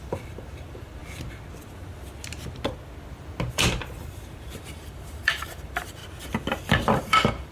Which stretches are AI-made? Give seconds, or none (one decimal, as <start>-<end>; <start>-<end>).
0.0-1.0; 3.5-6.0; 6.6-7.5